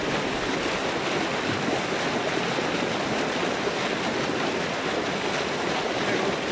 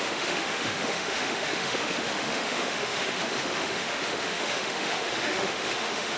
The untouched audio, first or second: first